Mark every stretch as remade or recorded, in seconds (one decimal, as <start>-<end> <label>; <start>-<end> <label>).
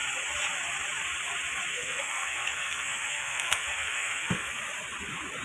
0.0-1.7 recorded; 1.7-4.6 remade; 4.6-5.4 recorded